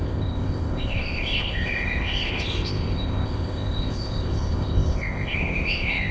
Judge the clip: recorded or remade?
remade